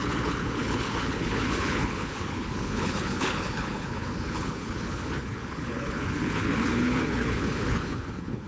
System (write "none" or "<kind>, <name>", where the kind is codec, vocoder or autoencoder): codec, HILCodec